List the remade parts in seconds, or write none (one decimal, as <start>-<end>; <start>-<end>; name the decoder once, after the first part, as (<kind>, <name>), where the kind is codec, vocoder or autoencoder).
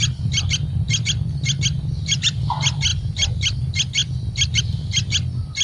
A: none